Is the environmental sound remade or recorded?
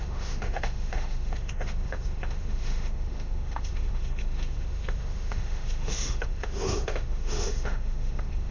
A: remade